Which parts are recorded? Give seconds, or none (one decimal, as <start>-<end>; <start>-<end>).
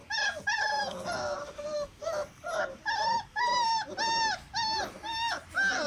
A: 0.0-1.4; 2.0-5.9